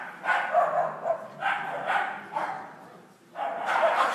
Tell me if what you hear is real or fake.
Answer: real